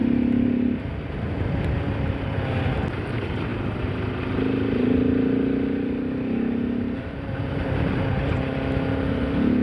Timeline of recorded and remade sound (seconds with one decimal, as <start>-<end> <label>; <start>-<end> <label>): 0.0-9.6 recorded